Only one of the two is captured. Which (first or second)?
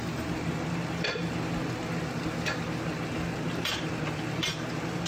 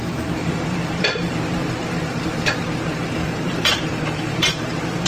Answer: first